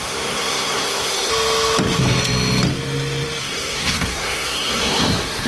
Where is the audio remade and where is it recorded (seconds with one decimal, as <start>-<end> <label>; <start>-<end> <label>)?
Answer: 0.0-1.3 remade; 1.3-3.4 recorded; 3.4-5.5 remade

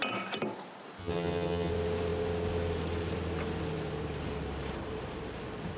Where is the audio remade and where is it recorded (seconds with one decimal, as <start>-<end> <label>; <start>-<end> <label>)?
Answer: 0.0-1.0 recorded; 1.0-1.7 remade; 1.7-5.8 recorded

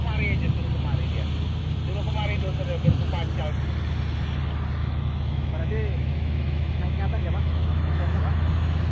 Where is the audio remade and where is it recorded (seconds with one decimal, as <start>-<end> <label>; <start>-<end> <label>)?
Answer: 0.0-4.8 recorded; 4.8-8.5 remade; 8.5-8.9 recorded

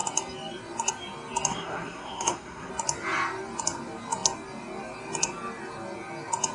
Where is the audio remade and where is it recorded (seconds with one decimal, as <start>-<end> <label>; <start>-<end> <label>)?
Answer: 0.0-1.5 recorded; 1.5-2.7 remade; 2.7-6.5 recorded

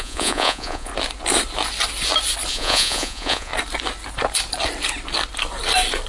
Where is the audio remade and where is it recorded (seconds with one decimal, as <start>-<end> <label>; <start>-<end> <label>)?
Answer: 0.0-0.9 remade; 0.9-2.5 recorded; 2.5-3.5 remade; 3.5-6.1 recorded